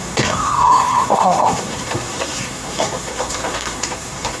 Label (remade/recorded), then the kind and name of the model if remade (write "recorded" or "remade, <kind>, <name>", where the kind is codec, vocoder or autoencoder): remade, codec, SNAC